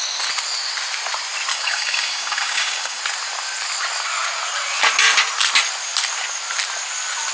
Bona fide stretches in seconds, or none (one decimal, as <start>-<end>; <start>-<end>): 0.0-1.5; 3.0-7.3